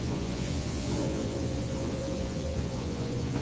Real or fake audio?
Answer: fake